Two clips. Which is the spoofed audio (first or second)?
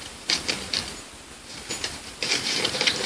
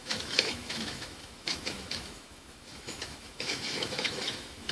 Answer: second